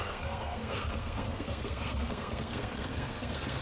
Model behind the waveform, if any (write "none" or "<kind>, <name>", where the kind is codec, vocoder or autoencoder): codec, SNAC